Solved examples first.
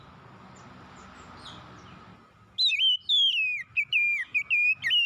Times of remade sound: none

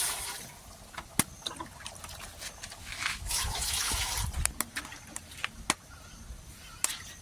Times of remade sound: 2.8-4.1 (autoencoder, DAC-VAE)

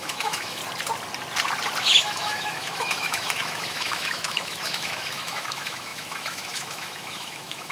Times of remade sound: 0.0-0.6 (autoencoder, DAC-VAE); 1.8-7.7

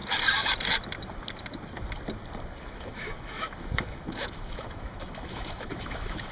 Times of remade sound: 2.6-6.3 (autoencoder, DAC-VAE)